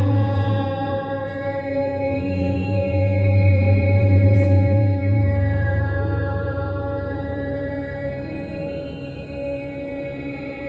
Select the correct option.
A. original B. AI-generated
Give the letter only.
B